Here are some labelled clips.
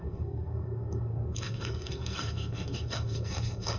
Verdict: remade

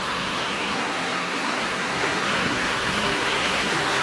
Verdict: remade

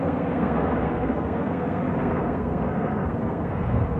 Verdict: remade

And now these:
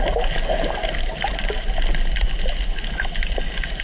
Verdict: recorded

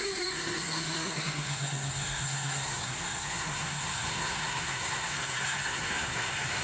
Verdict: remade